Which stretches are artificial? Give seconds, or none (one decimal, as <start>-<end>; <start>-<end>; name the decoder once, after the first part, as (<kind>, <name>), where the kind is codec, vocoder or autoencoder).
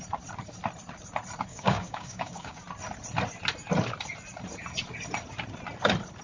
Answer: 1.5-2.6 (codec, DAC)